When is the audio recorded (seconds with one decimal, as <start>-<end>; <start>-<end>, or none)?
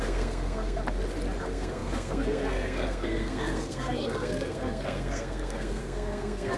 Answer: 0.8-1.4